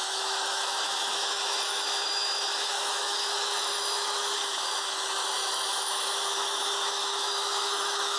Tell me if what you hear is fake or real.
fake